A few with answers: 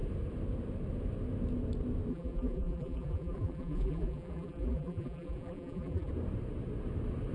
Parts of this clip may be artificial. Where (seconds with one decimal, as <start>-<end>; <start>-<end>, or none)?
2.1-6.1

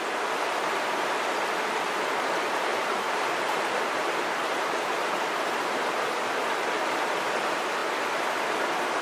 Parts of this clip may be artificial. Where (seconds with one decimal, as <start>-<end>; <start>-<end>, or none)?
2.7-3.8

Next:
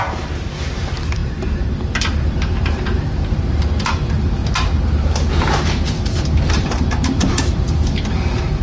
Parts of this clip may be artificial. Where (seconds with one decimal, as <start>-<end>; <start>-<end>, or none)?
0.0-4.4; 6.5-8.6

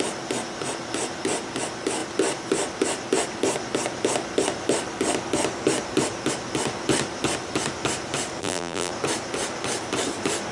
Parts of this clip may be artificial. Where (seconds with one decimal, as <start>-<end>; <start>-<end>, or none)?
8.4-8.9

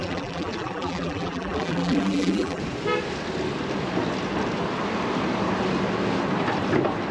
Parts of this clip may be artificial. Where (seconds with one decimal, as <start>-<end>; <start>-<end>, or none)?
0.0-2.6